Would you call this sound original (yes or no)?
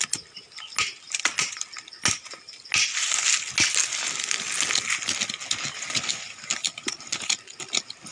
yes